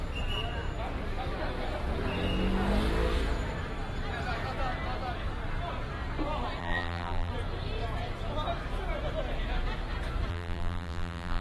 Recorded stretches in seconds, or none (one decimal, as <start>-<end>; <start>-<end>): 0.0-6.6; 7.3-10.3

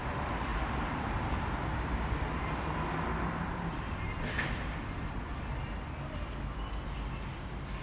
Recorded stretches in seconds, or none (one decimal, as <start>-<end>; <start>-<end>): none

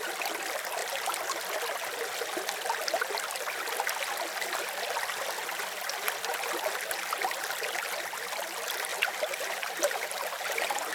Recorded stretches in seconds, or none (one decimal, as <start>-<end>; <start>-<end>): 0.0-8.9